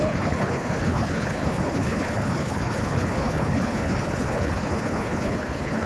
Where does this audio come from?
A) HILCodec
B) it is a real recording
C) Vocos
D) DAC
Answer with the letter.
A